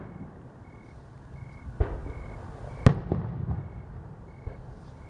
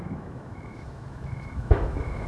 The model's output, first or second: second